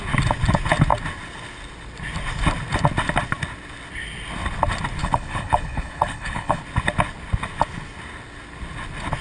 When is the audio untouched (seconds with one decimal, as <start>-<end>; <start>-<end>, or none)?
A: 0.0-5.0; 6.6-9.2